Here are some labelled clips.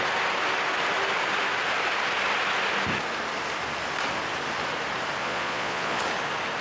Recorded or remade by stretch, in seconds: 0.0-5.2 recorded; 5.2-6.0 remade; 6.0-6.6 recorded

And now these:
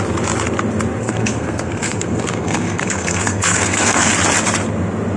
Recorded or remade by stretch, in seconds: 0.0-1.0 recorded; 1.0-4.1 remade; 4.1-5.2 recorded

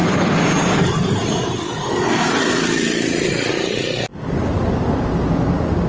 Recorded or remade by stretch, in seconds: 0.0-3.5 remade; 3.5-5.9 recorded

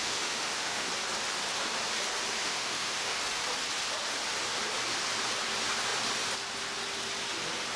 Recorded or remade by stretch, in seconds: 0.0-0.9 remade; 0.9-2.4 recorded; 2.4-3.2 remade; 3.2-7.8 recorded

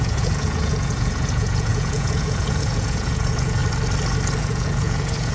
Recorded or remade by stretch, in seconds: 0.0-3.6 remade; 3.6-4.4 recorded; 4.4-5.3 remade

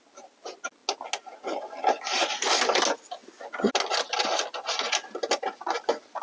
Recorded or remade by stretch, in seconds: 0.0-6.2 recorded

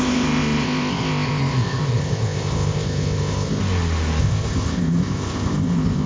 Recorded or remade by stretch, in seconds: 0.0-3.6 remade; 3.6-4.2 recorded; 4.2-6.1 remade

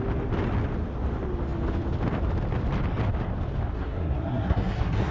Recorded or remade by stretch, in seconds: 0.0-3.7 recorded; 3.7-5.1 remade